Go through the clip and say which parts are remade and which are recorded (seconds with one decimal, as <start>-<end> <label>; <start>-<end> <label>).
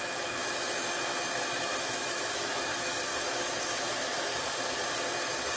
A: 0.0-3.1 remade; 3.1-3.6 recorded; 3.6-4.3 remade; 4.3-5.6 recorded